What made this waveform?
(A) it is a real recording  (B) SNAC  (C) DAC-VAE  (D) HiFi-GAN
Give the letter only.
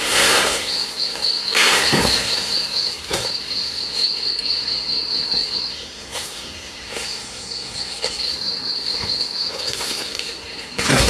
B